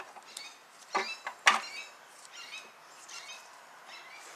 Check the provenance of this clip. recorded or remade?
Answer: recorded